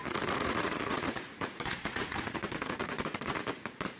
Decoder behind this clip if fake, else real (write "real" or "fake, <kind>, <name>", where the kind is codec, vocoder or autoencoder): fake, vocoder, Vocos